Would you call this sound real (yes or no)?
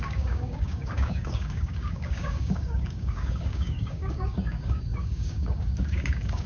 no